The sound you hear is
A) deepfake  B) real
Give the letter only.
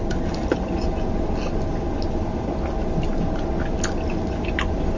B